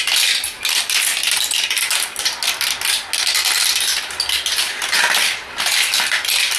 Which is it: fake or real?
real